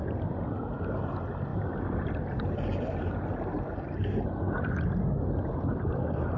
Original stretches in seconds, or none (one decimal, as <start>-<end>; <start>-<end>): 0.0-6.4